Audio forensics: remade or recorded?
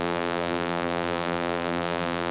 remade